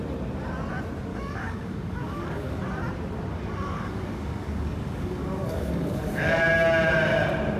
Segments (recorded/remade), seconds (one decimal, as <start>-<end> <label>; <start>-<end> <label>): 0.0-1.1 recorded; 1.1-2.6 remade; 2.6-3.3 recorded; 3.3-6.5 remade; 6.5-7.6 recorded